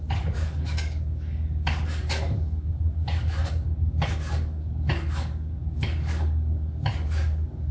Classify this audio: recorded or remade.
remade